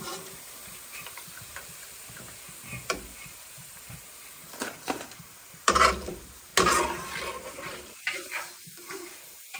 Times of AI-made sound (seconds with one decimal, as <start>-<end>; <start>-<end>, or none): 0.0-0.6; 1.2-6.5; 7.4-9.6